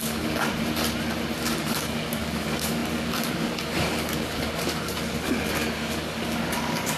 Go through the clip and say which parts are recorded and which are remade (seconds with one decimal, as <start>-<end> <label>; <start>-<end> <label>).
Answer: 0.0-0.5 remade; 0.5-1.4 recorded; 1.4-7.0 remade